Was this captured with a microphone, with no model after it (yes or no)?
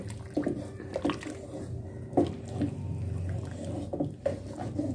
yes